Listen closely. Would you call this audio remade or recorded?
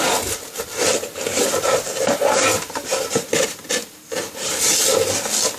recorded